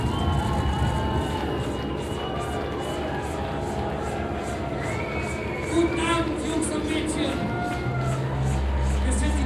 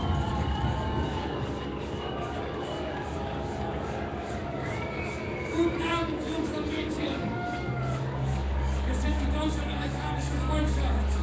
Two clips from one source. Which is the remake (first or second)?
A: second